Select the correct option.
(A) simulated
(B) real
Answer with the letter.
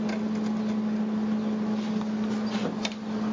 B